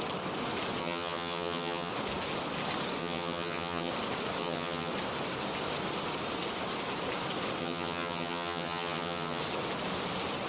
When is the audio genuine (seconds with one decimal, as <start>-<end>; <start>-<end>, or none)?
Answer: 0.0-0.8; 1.9-3.0; 3.9-4.4; 4.9-7.6; 9.4-10.5